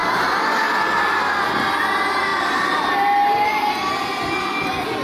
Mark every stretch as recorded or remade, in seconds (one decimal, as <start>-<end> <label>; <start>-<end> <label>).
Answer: 0.0-1.0 remade; 1.0-2.3 recorded; 2.3-2.9 remade; 2.9-5.0 recorded